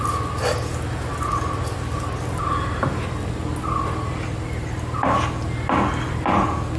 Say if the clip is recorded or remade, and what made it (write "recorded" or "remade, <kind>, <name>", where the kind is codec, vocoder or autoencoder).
recorded